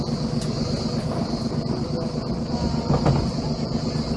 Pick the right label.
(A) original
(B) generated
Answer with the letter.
A